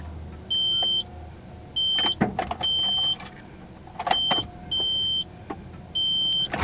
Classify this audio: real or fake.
real